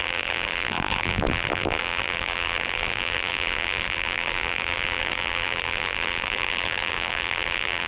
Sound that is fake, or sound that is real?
fake